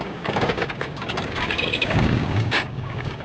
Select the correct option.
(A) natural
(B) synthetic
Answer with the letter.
B